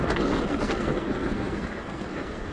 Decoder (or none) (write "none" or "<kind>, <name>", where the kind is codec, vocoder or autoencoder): codec, SNAC